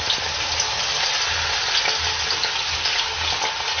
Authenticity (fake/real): real